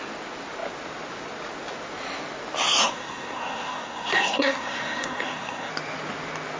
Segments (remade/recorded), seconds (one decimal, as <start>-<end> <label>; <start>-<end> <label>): 0.0-2.8 recorded; 2.8-5.7 remade; 5.7-6.6 recorded